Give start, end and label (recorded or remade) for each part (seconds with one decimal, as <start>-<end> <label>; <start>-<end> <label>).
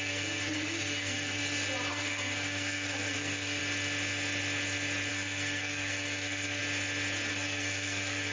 0.0-1.4 remade; 1.4-1.9 recorded; 1.9-3.6 remade; 3.6-5.1 recorded; 5.1-6.6 remade; 6.6-7.3 recorded; 7.3-8.3 remade